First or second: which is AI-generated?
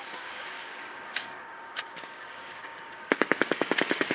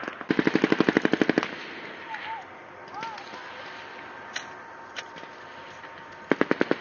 first